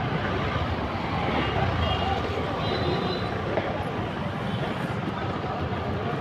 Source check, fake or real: real